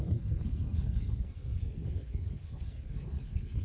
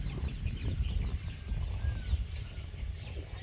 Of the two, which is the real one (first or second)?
second